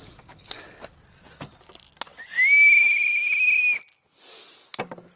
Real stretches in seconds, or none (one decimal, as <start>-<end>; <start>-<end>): 0.0-5.2